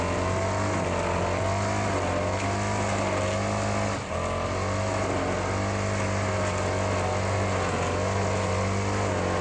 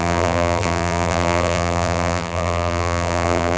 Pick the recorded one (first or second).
first